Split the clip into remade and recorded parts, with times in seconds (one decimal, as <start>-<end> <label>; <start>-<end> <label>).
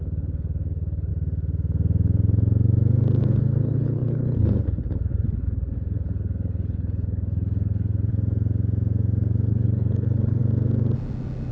0.0-1.1 remade; 1.1-3.3 recorded; 3.3-8.1 remade; 8.1-9.5 recorded; 9.5-10.4 remade; 10.4-11.5 recorded